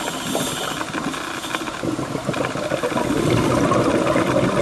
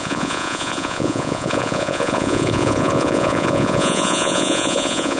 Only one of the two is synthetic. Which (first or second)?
second